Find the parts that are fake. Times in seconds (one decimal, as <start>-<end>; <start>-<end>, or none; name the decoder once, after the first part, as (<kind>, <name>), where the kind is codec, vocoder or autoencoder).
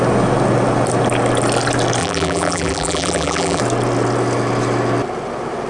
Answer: 2.0-3.6 (vocoder, BigVGAN v2)